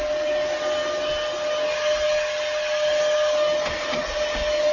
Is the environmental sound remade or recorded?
recorded